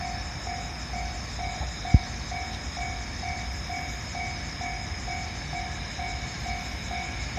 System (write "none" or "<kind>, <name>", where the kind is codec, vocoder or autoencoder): none